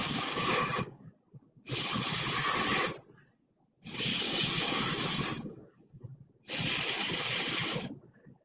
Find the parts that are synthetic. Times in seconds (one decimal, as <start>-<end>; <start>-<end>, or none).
0.0-1.1; 4.1-6.0